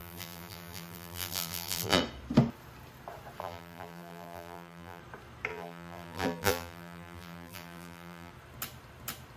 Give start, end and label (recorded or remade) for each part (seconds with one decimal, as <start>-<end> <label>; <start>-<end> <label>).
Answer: 0.0-2.0 remade; 2.0-3.4 recorded; 3.4-5.0 remade; 5.0-5.5 recorded; 5.5-8.3 remade; 8.3-9.4 recorded